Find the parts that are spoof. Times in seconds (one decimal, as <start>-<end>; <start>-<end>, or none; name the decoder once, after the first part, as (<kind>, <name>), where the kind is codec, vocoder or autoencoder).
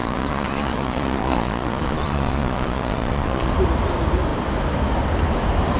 0.0-3.5 (vocoder, Vocos)